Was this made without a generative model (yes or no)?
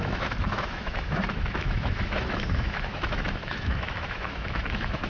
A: no